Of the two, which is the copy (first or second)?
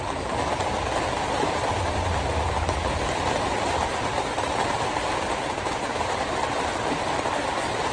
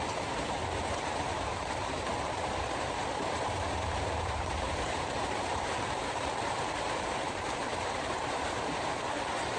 second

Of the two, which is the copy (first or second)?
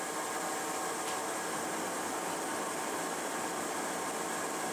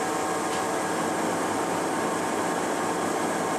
first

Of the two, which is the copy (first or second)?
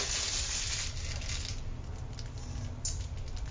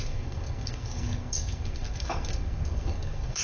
second